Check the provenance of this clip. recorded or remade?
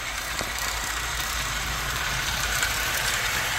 remade